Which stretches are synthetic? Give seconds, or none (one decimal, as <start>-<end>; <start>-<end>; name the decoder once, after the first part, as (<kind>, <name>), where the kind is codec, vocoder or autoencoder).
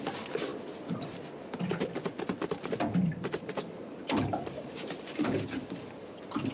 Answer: 3.1-5.8 (vocoder, BigVGAN v2)